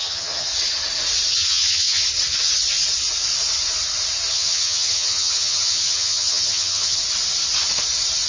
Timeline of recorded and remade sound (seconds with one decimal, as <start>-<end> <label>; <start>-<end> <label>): 0.0-0.5 remade; 0.5-1.3 recorded; 1.3-2.0 remade; 2.0-4.3 recorded; 4.3-7.0 remade; 7.0-8.3 recorded